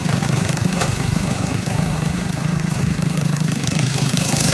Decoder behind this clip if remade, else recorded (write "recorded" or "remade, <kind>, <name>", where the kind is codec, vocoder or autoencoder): remade, codec, SNAC